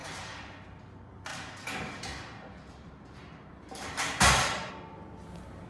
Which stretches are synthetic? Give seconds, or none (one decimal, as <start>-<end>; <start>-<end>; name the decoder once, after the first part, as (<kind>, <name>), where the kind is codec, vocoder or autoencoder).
0.0-0.6 (vocoder, BigVGAN v2); 1.3-4.7